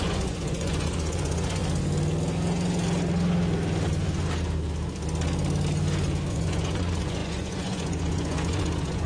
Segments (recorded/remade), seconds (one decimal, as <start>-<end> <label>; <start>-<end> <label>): 0.0-1.6 remade; 1.6-6.3 recorded; 6.3-9.1 remade